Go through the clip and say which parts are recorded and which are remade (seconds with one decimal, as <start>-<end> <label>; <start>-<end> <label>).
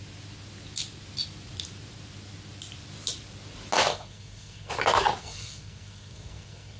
0.0-3.9 recorded; 3.9-4.7 remade; 4.7-5.2 recorded; 5.2-6.8 remade